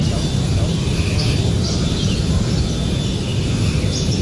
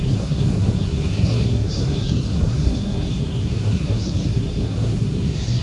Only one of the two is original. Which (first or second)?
first